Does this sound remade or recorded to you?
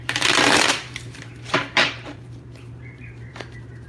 remade